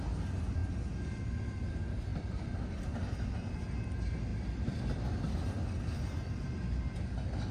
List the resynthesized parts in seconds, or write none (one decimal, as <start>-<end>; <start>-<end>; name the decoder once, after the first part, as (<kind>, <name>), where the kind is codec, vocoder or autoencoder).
2.1-2.8 (vocoder, BigVGAN v2); 4.3-5.3